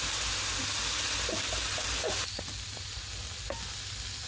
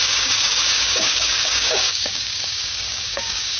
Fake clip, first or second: second